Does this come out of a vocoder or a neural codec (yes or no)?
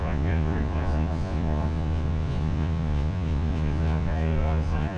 yes